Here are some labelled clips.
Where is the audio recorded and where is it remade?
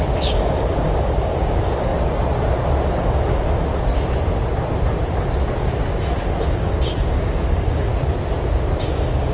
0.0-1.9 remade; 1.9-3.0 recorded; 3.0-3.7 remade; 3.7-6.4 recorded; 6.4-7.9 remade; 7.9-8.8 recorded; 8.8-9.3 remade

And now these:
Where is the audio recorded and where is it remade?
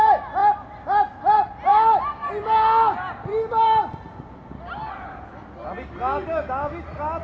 0.0-1.7 recorded; 1.7-2.3 remade; 2.3-7.2 recorded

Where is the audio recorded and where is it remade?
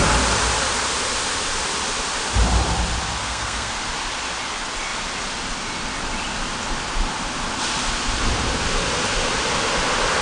0.0-3.2 recorded; 3.2-3.7 remade; 3.7-10.2 recorded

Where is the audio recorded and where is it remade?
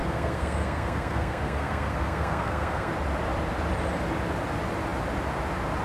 0.0-2.9 remade; 2.9-5.8 recorded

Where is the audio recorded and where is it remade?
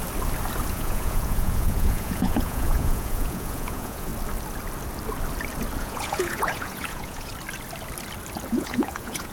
0.0-0.7 recorded; 0.7-4.1 remade; 4.1-5.8 recorded; 5.8-7.3 remade; 7.3-8.5 recorded; 8.5-9.3 remade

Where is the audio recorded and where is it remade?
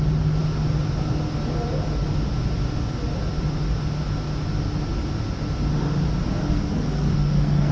0.0-6.4 recorded; 6.4-7.7 remade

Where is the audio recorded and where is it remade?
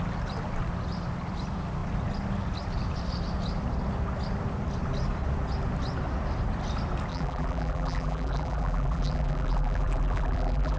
0.0-7.1 recorded; 7.1-10.8 remade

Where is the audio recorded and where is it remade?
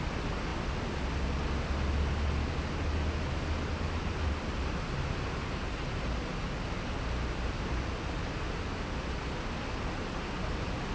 0.0-10.9 recorded